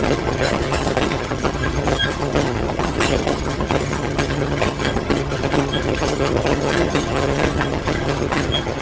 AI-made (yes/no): yes